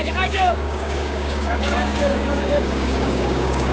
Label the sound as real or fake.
fake